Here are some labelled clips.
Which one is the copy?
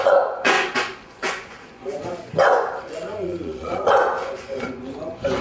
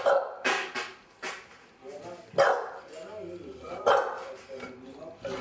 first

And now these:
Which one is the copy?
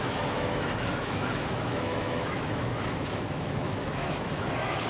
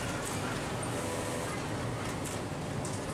first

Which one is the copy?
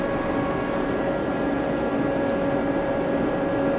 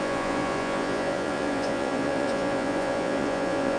second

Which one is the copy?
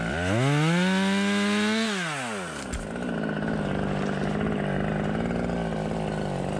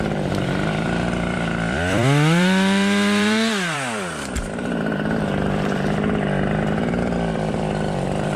second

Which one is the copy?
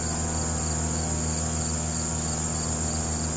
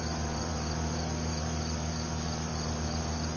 second